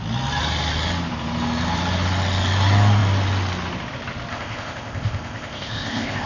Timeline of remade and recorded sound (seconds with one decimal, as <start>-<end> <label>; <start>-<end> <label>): 0.0-4.3 recorded; 4.3-6.3 remade